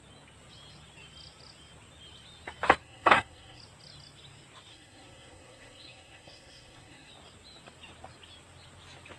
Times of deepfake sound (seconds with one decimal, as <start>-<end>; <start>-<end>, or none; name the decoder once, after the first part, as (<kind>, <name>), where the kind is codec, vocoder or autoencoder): 2.8-3.6 (codec, SNAC); 4.7-7.1